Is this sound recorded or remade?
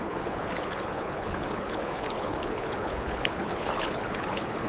remade